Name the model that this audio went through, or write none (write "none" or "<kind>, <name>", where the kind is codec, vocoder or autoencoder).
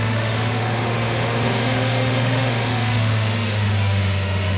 autoencoder, DAC-VAE